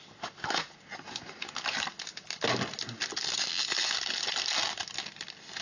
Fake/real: real